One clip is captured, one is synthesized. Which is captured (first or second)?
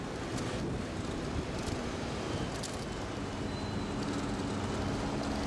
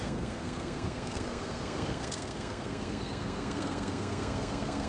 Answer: first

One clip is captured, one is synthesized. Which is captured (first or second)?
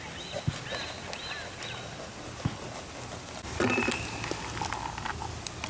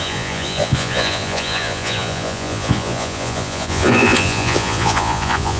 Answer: first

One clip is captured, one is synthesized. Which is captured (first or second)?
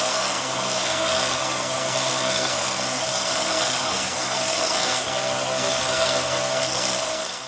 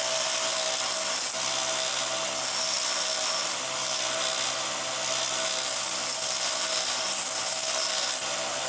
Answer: second